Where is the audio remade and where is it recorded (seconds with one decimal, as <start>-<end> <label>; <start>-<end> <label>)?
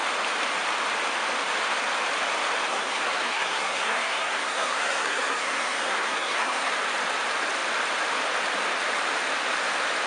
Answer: 0.0-2.7 recorded; 2.7-6.7 remade; 6.7-10.1 recorded